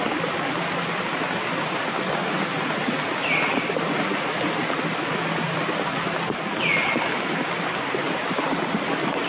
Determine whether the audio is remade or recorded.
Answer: recorded